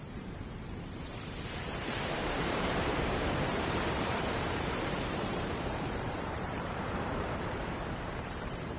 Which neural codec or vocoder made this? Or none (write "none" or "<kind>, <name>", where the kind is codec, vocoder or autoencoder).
vocoder, BigVGAN v2